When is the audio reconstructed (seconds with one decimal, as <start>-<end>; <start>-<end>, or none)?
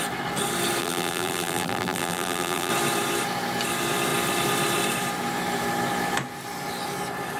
0.8-2.7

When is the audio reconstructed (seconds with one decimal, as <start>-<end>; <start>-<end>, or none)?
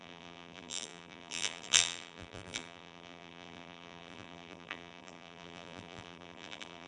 0.0-6.9